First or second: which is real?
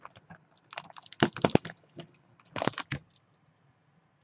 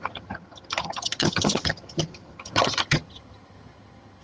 first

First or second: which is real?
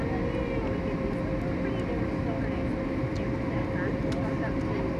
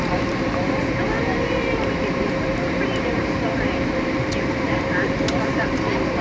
first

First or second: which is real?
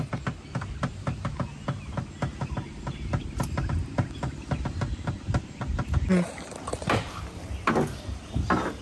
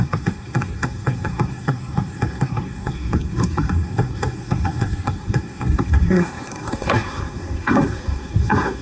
first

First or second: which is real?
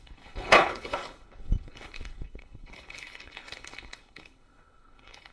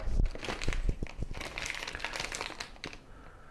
second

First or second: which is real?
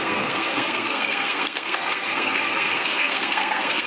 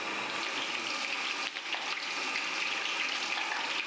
second